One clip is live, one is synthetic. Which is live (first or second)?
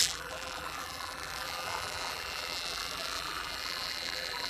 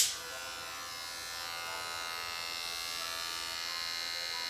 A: second